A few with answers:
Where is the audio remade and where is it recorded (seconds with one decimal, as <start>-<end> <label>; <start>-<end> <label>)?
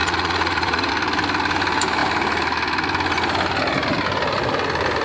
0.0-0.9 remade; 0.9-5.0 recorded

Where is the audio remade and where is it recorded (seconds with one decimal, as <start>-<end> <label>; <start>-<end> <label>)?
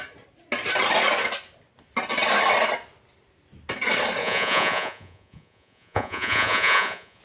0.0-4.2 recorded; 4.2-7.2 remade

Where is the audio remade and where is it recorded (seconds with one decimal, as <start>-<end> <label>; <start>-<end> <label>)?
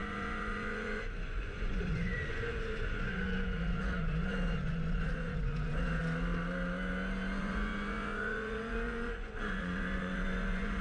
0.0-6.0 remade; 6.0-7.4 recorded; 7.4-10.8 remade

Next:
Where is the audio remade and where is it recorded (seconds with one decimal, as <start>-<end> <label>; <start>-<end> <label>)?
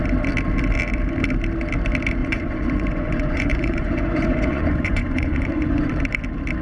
0.0-2.2 recorded; 2.2-5.9 remade; 5.9-6.6 recorded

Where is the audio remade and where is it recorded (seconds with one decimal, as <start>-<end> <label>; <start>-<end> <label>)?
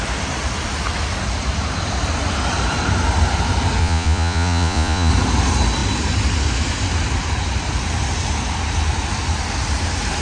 0.0-3.8 recorded; 3.8-5.1 remade; 5.1-10.2 recorded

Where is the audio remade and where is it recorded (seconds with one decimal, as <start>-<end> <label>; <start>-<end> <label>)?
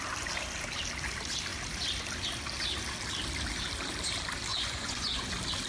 0.0-4.5 recorded; 4.5-5.3 remade; 5.3-5.7 recorded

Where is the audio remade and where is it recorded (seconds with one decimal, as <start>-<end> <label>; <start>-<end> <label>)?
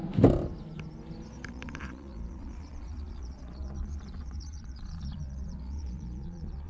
0.0-1.5 recorded; 1.5-6.7 remade